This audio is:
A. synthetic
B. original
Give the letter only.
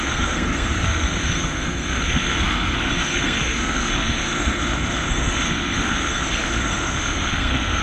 A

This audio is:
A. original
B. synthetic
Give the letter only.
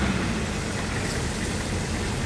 A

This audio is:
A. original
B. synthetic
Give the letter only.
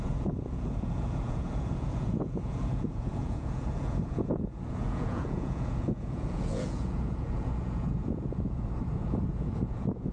B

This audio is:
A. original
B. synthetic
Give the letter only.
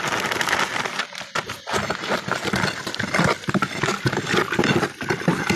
A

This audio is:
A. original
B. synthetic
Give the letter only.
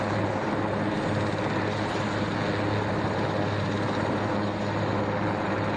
A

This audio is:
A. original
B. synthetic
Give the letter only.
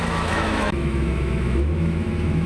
B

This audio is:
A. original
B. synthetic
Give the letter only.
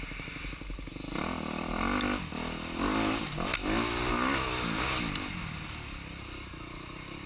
A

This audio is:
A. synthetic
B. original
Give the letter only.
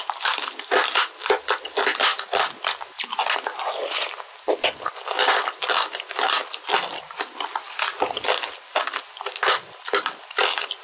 B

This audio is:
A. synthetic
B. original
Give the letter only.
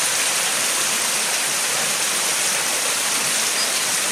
B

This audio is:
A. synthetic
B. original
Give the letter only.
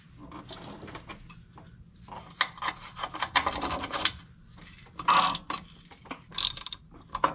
B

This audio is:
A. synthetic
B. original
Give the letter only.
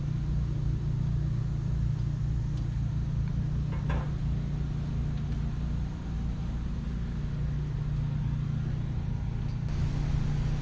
B